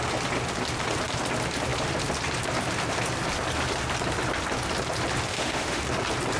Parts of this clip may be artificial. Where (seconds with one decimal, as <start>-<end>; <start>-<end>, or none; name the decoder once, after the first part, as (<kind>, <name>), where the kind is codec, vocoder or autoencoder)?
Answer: 5.3-5.8 (autoencoder, DAC-VAE)